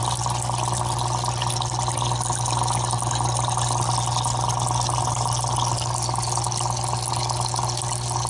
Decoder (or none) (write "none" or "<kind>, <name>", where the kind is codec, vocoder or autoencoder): none